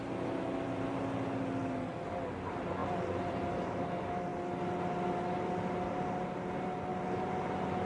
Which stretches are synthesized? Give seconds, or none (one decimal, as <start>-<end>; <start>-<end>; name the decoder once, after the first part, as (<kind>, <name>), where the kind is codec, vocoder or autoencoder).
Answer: none